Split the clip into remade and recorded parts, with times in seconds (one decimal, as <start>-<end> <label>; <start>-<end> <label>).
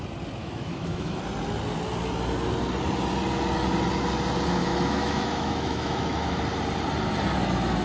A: 0.0-0.4 recorded; 0.4-1.2 remade; 1.2-4.6 recorded; 4.6-6.4 remade; 6.4-7.8 recorded